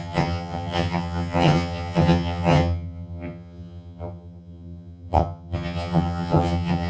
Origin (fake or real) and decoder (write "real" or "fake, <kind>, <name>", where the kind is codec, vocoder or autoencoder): fake, vocoder, HiFi-GAN